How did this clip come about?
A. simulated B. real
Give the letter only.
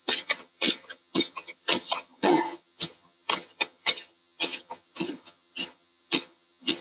A